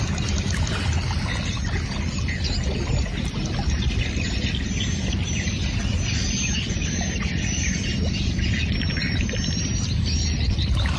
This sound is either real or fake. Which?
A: real